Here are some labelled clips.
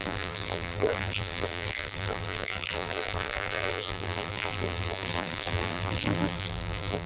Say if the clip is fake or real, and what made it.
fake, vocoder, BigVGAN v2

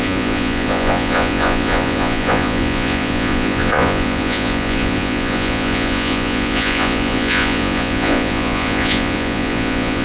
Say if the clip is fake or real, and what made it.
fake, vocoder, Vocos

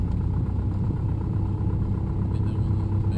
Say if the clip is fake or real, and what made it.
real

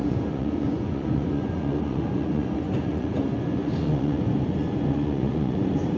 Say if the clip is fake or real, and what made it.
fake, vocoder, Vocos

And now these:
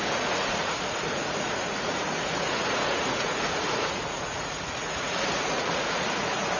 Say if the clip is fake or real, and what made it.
fake, vocoder, Vocos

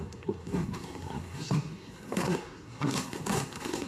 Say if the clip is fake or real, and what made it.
fake, codec, SNAC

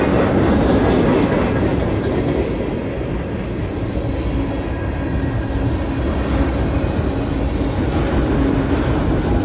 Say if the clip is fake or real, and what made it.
real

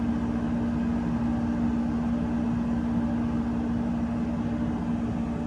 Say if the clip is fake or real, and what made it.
real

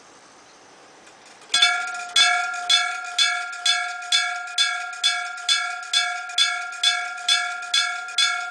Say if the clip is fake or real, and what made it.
real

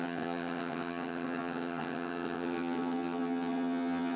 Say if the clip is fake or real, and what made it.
fake, vocoder, HiFi-GAN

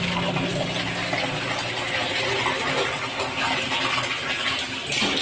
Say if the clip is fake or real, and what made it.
real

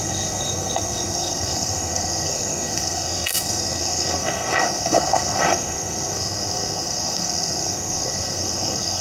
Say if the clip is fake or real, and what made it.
fake, codec, SNAC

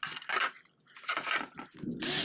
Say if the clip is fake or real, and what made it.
real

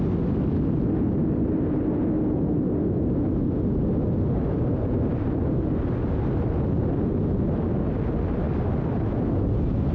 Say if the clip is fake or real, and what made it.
real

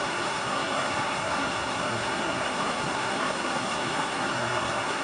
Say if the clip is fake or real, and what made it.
fake, codec, SNAC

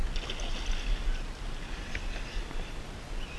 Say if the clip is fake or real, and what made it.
real